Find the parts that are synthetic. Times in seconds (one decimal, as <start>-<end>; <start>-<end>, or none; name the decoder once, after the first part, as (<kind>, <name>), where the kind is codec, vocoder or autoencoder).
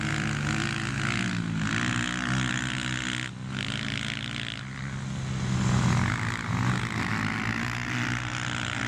none